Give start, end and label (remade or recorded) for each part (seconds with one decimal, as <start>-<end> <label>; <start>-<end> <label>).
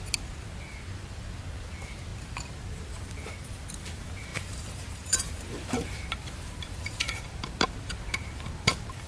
0.0-2.1 recorded; 2.1-3.2 remade; 3.2-4.3 recorded; 4.3-9.1 remade